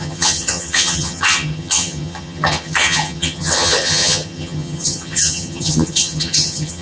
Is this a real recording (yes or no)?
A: no